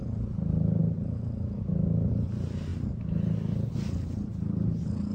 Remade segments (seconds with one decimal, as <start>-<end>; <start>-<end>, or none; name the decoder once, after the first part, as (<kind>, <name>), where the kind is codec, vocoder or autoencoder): none